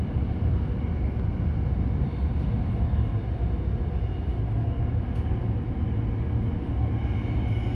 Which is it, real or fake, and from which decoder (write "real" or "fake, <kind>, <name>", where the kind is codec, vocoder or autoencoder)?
real